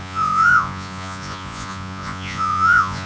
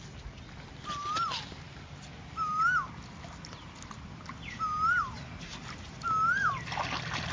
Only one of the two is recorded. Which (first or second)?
second